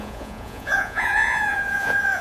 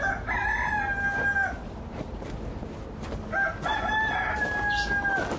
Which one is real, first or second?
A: second